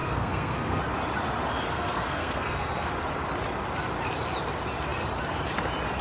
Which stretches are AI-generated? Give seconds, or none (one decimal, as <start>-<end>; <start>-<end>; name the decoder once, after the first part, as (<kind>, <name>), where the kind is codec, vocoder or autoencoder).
0.0-0.8 (codec, SNAC); 1.7-2.9